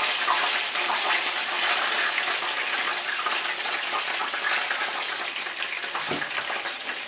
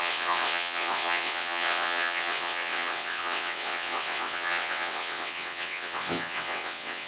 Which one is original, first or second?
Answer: first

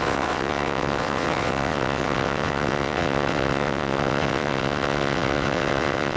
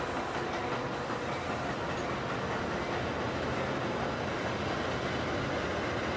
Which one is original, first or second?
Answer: second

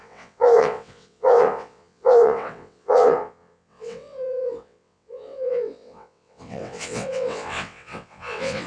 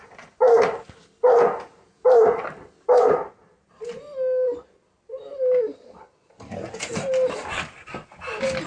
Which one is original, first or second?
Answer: second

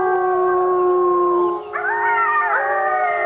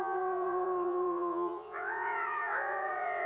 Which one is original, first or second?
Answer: first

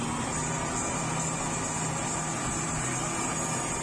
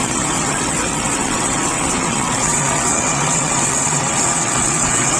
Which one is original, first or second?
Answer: first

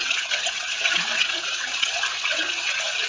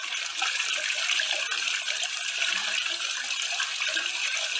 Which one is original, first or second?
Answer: second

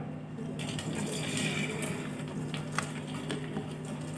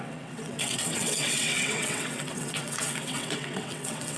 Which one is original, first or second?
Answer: first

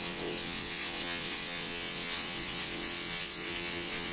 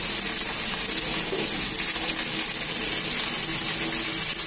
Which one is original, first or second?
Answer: second